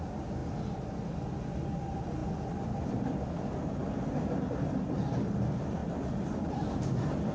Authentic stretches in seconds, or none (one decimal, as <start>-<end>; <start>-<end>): 0.0-2.2; 3.3-5.8